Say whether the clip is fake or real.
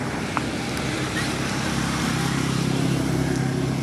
real